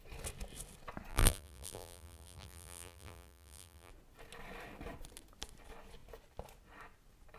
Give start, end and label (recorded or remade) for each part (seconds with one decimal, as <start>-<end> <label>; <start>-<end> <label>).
0.0-1.1 recorded; 1.1-3.9 remade; 3.9-7.4 recorded